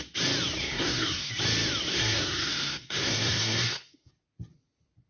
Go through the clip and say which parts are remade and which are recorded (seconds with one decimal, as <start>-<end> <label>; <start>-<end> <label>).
0.0-0.6 recorded; 0.6-1.3 remade; 1.3-1.9 recorded; 1.9-4.1 remade; 4.1-5.1 recorded